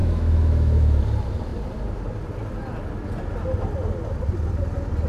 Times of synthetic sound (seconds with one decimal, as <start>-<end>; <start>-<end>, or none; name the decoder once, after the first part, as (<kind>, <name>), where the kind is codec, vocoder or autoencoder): 0.0-1.0 (autoencoder, DAC-VAE)